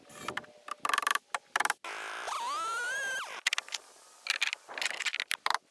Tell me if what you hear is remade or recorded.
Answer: recorded